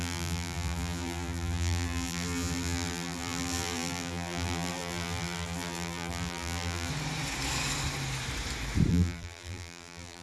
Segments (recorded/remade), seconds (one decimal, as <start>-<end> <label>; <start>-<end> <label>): 0.0-6.9 remade; 6.9-8.9 recorded; 8.9-10.2 remade